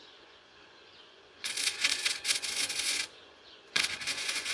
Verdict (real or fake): fake